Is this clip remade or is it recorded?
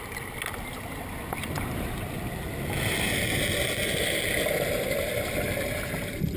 recorded